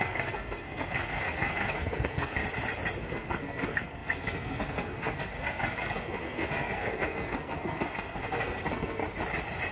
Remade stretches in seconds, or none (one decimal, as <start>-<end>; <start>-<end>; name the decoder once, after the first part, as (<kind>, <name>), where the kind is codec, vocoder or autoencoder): 0.0-2.4 (codec, SNAC); 3.0-9.0